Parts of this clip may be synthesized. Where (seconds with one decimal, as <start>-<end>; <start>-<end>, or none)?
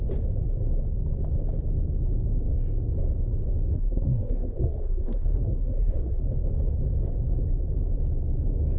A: 3.7-6.2